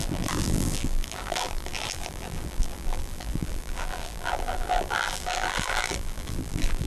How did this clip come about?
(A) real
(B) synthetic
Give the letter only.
B